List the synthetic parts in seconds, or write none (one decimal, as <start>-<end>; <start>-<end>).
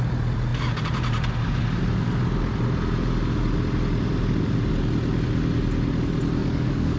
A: 6.4-7.0